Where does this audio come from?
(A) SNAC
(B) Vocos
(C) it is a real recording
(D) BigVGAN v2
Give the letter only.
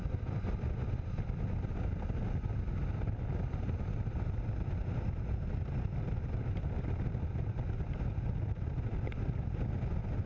C